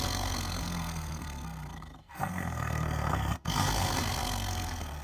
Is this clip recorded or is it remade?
remade